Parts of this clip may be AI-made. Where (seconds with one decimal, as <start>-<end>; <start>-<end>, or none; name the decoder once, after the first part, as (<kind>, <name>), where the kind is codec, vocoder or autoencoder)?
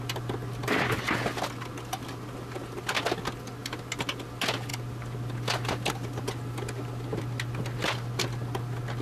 none